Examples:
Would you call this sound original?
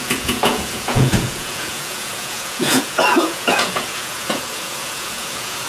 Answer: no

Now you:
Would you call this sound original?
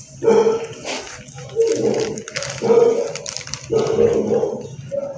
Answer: yes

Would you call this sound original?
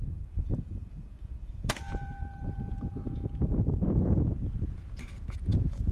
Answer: no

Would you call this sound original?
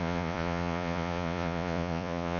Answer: no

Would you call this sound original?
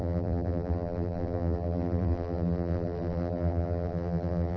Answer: no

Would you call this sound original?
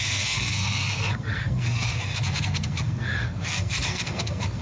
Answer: no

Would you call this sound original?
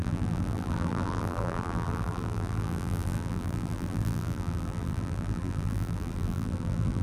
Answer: no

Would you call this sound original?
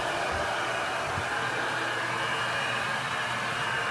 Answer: yes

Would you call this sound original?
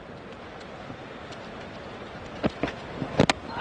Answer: yes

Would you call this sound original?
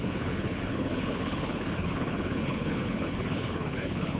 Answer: no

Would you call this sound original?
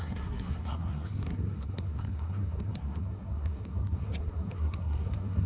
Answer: no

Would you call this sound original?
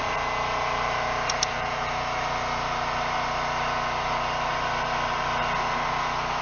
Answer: yes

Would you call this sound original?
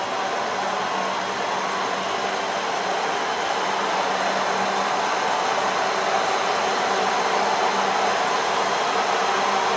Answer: yes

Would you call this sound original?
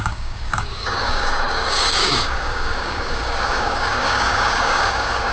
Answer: no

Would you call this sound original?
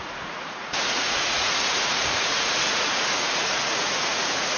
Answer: no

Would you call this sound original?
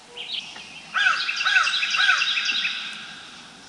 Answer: yes